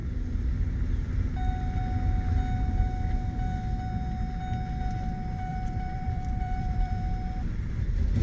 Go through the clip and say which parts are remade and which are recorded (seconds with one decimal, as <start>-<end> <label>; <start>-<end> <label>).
0.0-5.5 recorded; 5.5-8.2 remade

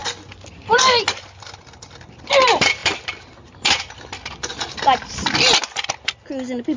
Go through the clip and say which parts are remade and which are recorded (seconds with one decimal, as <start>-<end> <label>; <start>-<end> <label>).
0.0-6.8 recorded

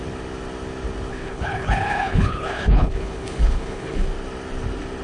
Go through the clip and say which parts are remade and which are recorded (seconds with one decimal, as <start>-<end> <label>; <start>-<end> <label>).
0.0-1.1 recorded; 1.1-4.1 remade; 4.1-5.0 recorded